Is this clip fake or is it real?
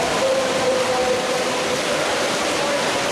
real